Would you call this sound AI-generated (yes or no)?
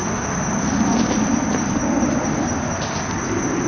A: no